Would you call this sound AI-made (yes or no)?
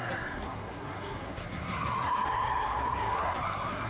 yes